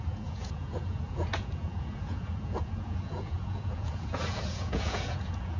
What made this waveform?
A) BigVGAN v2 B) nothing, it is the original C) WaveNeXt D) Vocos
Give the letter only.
D